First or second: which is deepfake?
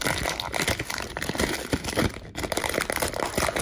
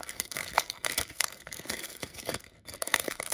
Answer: second